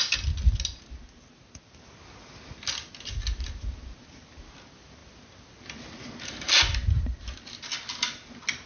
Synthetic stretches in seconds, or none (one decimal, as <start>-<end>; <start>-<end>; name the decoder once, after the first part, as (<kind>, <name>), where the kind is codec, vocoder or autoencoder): none